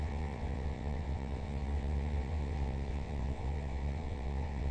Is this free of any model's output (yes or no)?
no